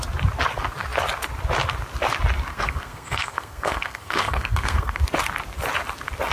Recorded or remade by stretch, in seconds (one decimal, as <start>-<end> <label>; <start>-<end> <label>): 0.0-2.5 recorded; 2.5-5.0 remade; 5.0-6.3 recorded